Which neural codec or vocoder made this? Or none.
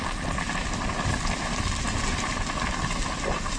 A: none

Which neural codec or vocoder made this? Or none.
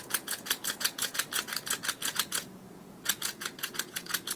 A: vocoder, Vocos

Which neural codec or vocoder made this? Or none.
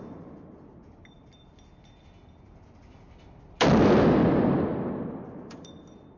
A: none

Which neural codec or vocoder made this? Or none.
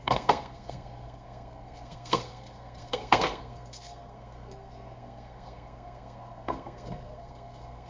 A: codec, SNAC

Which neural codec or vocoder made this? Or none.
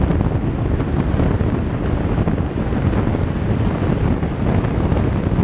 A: none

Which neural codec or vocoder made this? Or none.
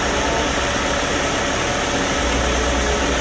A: none